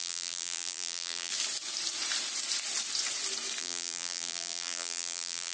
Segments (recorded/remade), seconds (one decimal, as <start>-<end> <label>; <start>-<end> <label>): 0.0-1.3 remade; 1.3-3.6 recorded; 3.6-5.5 remade